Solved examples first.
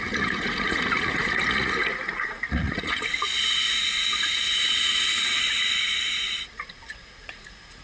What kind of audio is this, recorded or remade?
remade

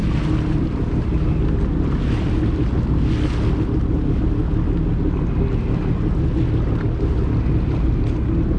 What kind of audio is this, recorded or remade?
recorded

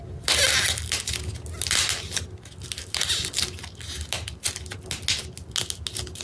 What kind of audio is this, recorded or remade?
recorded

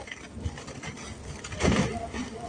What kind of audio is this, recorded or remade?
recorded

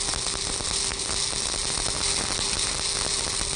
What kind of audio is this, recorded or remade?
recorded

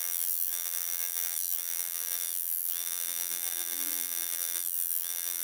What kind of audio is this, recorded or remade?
remade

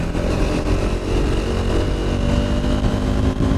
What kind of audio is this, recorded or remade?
recorded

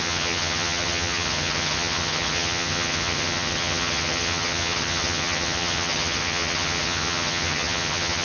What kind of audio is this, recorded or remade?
remade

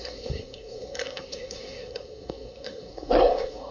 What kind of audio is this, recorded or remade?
remade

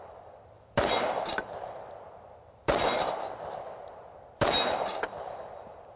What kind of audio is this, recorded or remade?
recorded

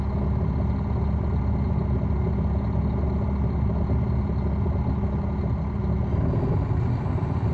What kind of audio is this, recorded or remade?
recorded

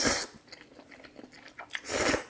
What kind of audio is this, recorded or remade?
recorded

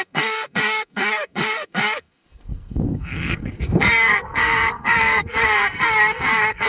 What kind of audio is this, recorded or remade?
remade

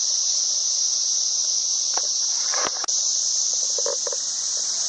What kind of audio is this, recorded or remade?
recorded